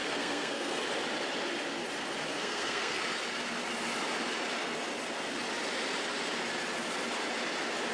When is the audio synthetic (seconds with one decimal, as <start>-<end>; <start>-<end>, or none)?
0.0-0.8; 2.3-3.0